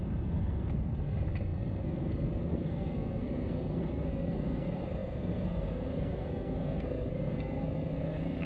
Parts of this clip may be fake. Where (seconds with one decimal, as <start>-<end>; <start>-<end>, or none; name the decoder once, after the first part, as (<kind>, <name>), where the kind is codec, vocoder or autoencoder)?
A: 0.0-8.5 (codec, SNAC)